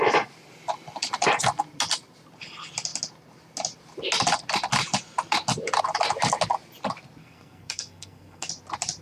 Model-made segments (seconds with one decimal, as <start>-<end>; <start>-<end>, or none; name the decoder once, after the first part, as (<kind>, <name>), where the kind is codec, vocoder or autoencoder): 7.2-8.5 (codec, SNAC)

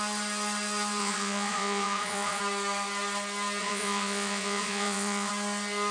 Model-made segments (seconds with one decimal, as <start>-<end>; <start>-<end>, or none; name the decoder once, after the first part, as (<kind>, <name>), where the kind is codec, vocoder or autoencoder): 1.0-2.4 (vocoder, Vocos); 3.6-5.3

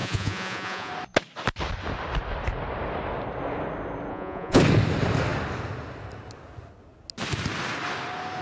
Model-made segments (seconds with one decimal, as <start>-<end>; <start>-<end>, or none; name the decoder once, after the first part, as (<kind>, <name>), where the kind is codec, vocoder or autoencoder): 0.0-0.9 (vocoder, Vocos); 4.1-4.6

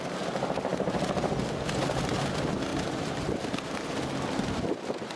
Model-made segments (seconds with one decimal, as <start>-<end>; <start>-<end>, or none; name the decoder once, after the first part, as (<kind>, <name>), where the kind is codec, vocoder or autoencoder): 0.7-1.7 (vocoder, BigVGAN v2); 2.7-3.5

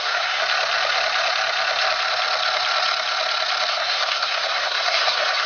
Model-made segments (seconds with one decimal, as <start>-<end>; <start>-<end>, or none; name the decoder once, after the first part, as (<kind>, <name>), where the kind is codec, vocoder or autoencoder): 0.0-0.4 (codec, SNAC); 3.7-5.5

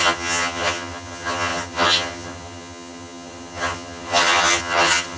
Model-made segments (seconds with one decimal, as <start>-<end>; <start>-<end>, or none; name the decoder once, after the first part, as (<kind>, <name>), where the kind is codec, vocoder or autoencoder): 0.0-5.2 (vocoder, HiFi-GAN)